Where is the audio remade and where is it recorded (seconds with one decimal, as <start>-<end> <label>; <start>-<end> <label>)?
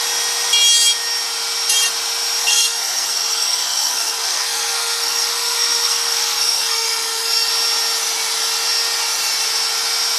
0.0-2.4 recorded; 2.4-7.5 remade; 7.5-10.2 recorded